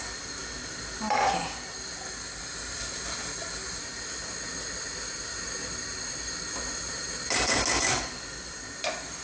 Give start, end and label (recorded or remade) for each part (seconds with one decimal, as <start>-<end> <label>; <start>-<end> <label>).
0.0-9.2 recorded